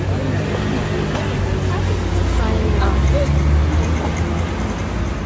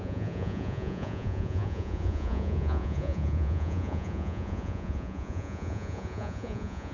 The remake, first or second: second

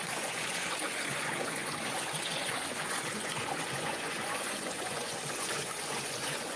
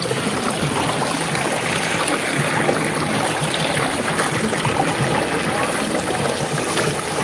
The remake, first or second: first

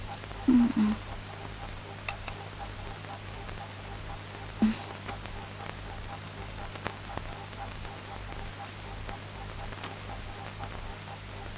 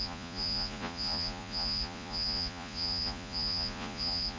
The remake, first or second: second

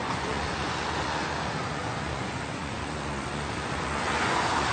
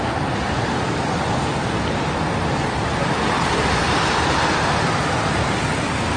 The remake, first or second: first